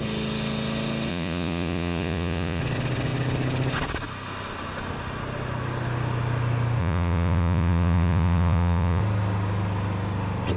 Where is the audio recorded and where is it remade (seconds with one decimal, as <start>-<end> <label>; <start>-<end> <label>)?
0.0-1.1 recorded; 1.1-2.6 remade; 2.6-6.8 recorded; 6.8-9.0 remade; 9.0-10.6 recorded

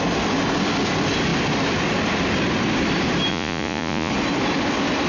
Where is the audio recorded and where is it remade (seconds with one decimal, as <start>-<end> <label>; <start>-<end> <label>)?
0.0-3.3 recorded; 3.3-4.1 remade; 4.1-5.1 recorded